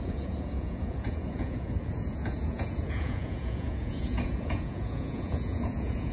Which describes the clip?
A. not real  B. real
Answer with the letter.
A